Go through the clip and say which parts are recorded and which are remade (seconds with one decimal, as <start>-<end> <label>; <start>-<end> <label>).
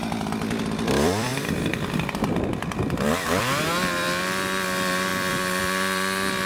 0.0-6.5 remade